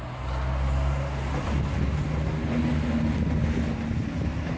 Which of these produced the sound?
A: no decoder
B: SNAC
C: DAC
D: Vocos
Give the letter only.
A